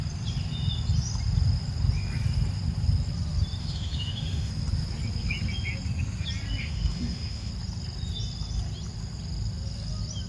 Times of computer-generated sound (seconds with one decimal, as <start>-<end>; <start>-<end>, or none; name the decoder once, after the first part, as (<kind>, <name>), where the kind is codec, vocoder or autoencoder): 3.6-4.5 (autoencoder, DAC-VAE); 6.6-7.5